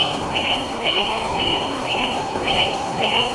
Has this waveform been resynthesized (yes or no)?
yes